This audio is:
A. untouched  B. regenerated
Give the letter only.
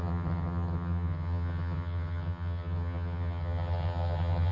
B